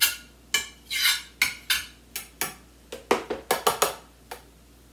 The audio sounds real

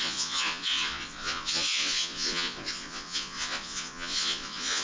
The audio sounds fake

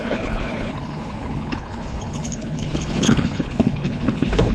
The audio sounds fake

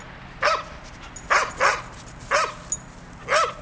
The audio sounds real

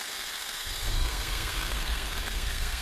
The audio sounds fake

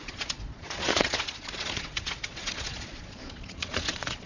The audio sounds fake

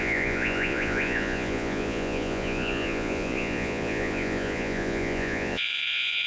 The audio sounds fake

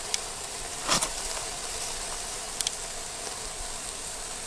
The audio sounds fake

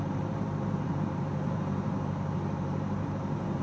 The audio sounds fake